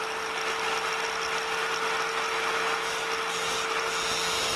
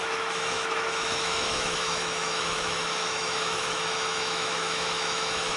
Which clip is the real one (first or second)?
first